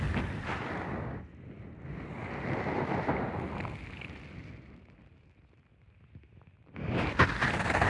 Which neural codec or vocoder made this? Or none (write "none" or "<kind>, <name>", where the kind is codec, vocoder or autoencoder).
none